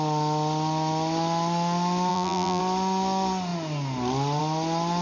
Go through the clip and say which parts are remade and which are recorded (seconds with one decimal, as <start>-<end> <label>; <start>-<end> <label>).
0.0-2.1 recorded; 2.1-2.6 remade; 2.6-5.0 recorded